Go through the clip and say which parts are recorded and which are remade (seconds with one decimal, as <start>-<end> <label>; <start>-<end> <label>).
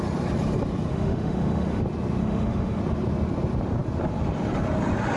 0.0-0.9 recorded; 0.9-1.8 remade; 1.8-2.2 recorded; 2.2-2.8 remade; 2.8-5.2 recorded